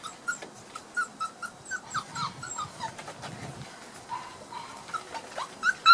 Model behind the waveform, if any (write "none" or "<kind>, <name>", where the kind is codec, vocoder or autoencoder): none